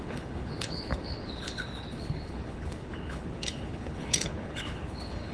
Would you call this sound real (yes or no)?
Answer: no